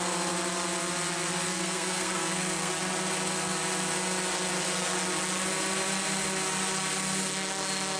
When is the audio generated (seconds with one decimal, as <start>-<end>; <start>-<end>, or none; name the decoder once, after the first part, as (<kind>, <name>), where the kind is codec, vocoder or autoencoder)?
1.5-2.7 (codec, SNAC)